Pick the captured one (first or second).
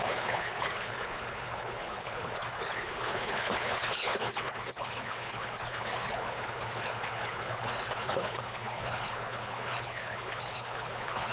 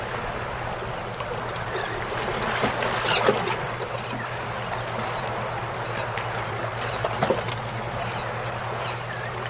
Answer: second